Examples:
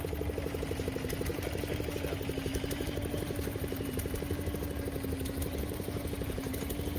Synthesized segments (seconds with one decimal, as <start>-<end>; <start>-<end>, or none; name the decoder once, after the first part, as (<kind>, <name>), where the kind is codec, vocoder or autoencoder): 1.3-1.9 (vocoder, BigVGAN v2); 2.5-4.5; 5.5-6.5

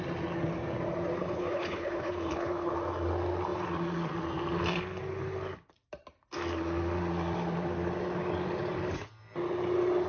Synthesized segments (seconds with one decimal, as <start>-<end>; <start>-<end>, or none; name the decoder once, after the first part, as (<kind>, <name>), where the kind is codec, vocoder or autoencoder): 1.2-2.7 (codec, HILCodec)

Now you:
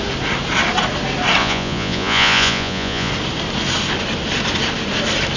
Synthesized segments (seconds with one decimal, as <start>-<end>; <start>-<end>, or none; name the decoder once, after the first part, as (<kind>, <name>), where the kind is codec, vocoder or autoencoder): 1.4-3.1 (vocoder, Vocos)

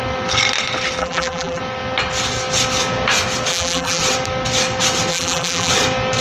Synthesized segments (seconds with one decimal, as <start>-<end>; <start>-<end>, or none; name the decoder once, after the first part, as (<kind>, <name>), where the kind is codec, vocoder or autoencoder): 1.0-1.6 (vocoder, BigVGAN v2); 3.5-4.0; 5.1-5.7